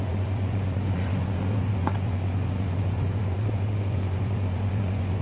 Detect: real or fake fake